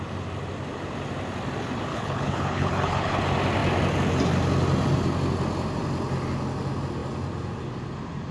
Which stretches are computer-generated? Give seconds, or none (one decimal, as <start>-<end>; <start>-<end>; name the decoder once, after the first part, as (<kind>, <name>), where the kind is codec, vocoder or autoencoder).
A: 1.9-3.2 (codec, HILCodec)